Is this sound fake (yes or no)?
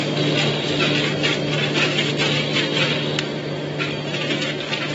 no